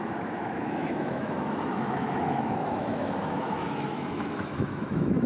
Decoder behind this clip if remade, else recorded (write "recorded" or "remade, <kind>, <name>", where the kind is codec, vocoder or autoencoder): remade, autoencoder, DAC-VAE